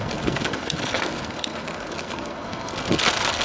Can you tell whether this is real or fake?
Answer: fake